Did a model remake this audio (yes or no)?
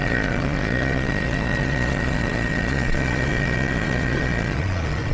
yes